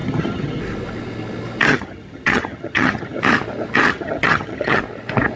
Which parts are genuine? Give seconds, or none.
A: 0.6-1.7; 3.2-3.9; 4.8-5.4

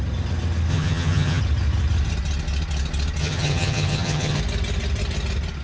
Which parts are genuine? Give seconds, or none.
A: 0.0-0.7; 1.4-3.2; 4.4-5.6

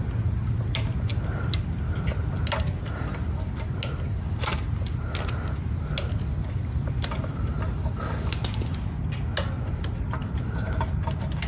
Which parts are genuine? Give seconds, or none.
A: 0.0-11.5

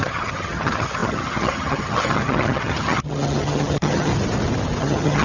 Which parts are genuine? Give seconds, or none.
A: 4.1-4.8

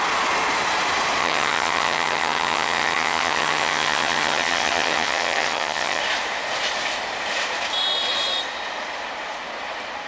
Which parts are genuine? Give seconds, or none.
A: 0.0-1.2; 6.0-10.1